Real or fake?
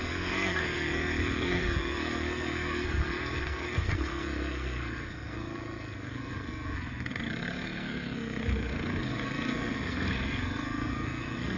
fake